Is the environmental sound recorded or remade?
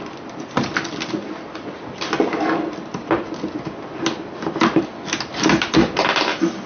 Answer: recorded